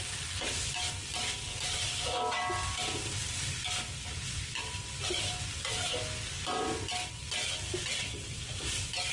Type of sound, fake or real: real